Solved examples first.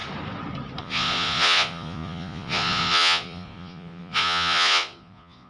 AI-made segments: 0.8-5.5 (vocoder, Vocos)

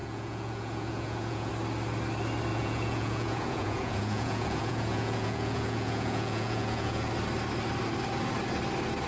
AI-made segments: 0.0-1.5 (vocoder, Vocos); 2.5-7.1